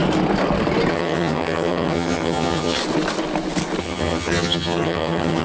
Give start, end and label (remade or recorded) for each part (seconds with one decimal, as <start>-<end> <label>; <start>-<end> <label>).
0.0-0.9 recorded; 0.9-2.8 remade; 2.8-3.8 recorded; 3.8-5.4 remade